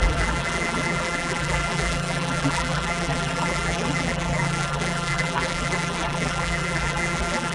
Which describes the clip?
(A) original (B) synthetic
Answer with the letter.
B